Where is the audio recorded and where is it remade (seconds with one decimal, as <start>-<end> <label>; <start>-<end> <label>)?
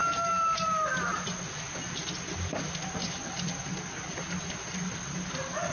0.0-5.7 recorded